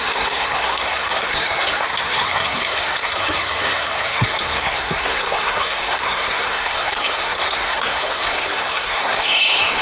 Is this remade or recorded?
remade